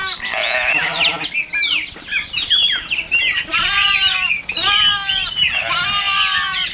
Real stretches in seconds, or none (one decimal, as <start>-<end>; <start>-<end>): 0.0-6.7